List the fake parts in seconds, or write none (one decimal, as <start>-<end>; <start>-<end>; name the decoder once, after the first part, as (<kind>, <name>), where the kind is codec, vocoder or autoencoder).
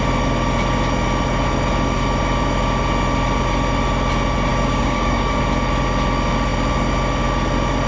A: 4.5-5.4 (codec, DAC)